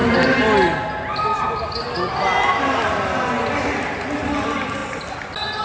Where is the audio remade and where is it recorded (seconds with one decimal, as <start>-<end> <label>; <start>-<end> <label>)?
0.0-5.6 recorded

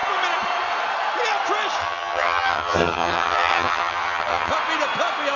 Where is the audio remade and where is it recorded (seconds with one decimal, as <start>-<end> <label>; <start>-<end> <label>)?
0.0-1.8 recorded; 1.8-4.5 remade; 4.5-5.4 recorded

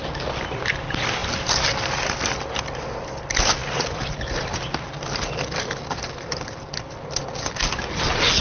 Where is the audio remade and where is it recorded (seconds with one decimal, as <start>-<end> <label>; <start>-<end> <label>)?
0.0-8.4 recorded

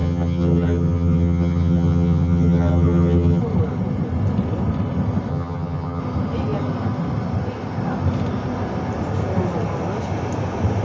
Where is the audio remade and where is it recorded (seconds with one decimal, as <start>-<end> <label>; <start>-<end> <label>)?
0.0-3.4 remade; 3.4-5.3 recorded; 5.3-6.0 remade; 6.0-10.8 recorded

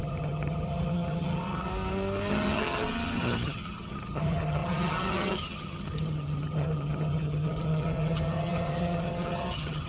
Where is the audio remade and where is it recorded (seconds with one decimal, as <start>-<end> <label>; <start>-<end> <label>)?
0.0-1.7 remade; 1.7-2.3 recorded; 2.3-9.9 remade

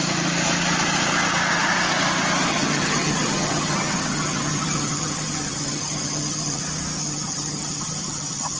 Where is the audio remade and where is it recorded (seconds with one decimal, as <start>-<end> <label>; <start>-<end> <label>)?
0.0-2.5 recorded; 2.5-6.6 remade; 6.6-7.0 recorded; 7.0-8.6 remade

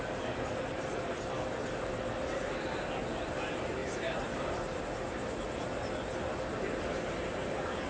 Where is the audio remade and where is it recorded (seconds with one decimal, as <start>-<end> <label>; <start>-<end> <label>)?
0.0-7.9 recorded

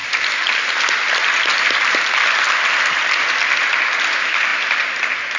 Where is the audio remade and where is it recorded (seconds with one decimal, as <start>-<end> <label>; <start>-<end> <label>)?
0.0-5.4 recorded